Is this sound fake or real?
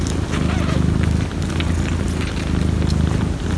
real